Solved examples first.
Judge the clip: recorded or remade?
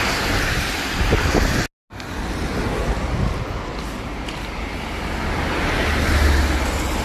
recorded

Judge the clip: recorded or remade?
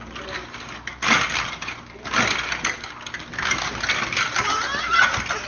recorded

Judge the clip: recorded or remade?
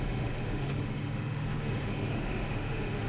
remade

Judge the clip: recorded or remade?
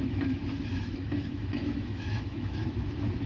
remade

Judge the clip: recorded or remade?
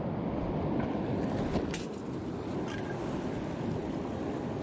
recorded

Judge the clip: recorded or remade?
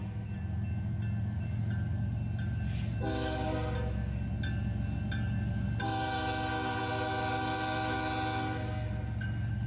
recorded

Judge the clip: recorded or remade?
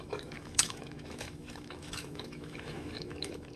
remade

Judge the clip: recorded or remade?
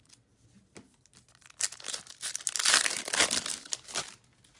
recorded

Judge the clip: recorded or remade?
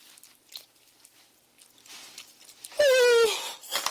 recorded